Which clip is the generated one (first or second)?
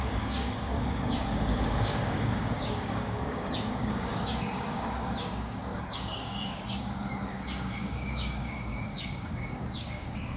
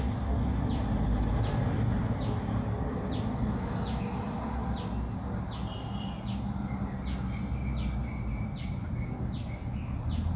first